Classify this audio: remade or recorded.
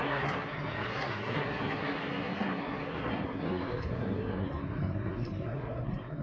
remade